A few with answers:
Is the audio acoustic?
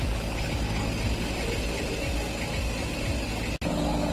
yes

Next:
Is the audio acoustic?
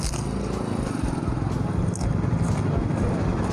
yes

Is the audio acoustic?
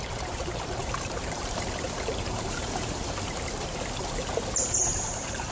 no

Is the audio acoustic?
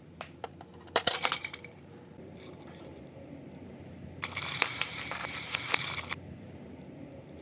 no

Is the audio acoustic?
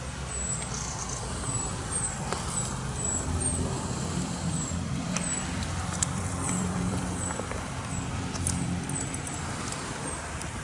no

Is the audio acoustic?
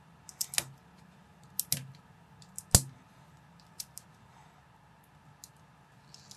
yes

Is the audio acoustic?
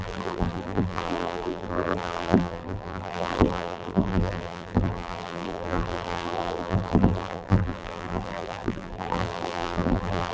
no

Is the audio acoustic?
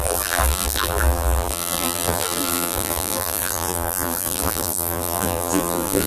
no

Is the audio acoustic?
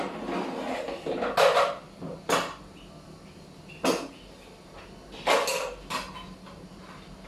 yes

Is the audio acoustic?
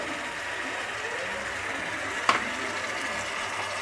yes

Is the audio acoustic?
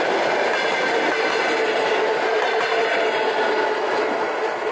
yes